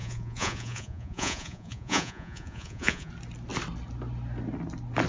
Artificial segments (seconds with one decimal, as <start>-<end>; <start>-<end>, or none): 0.0-3.1